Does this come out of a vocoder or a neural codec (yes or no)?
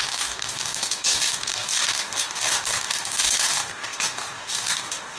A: yes